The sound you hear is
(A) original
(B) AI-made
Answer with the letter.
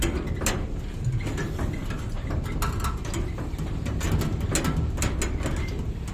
A